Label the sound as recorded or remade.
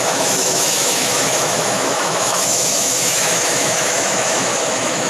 remade